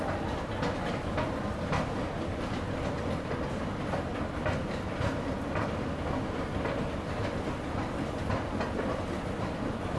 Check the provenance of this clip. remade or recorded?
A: remade